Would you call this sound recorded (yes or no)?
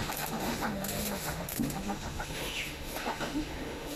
no